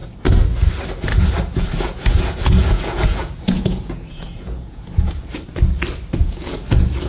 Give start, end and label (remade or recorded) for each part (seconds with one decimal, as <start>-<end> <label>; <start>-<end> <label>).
0.0-1.1 recorded; 1.1-5.4 remade; 5.4-6.2 recorded; 6.2-7.1 remade